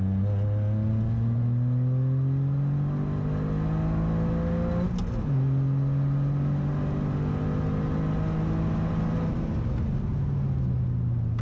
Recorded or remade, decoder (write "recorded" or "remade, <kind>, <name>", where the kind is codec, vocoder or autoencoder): recorded